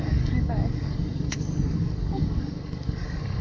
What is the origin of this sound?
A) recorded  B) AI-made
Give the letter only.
B